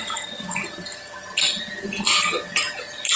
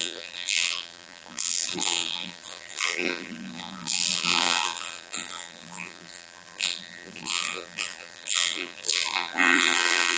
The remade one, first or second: second